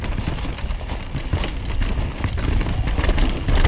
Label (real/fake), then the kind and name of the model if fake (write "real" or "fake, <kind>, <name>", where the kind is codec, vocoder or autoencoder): real